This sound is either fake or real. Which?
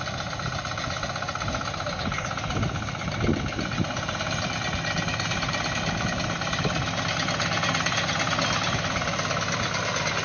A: real